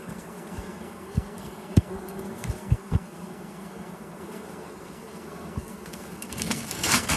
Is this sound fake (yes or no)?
yes